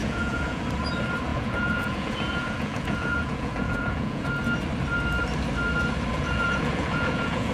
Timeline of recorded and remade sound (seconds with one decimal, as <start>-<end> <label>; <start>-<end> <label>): 0.0-0.6 remade; 0.6-1.3 recorded; 1.3-4.3 remade; 4.3-6.1 recorded; 6.1-7.5 remade